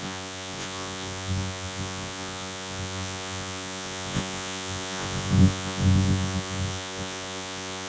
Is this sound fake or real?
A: fake